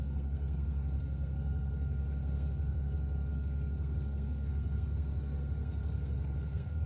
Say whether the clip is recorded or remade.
remade